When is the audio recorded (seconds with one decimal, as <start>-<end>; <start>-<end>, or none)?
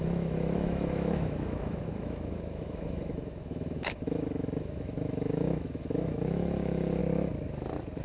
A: 7.0-8.0